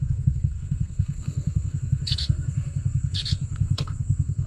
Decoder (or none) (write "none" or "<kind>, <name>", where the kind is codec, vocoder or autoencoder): codec, SNAC